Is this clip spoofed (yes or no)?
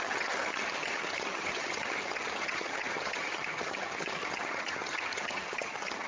yes